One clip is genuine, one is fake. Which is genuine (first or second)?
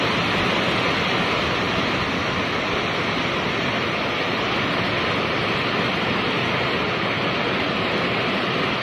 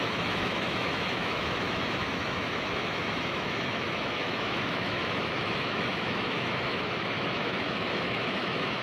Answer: first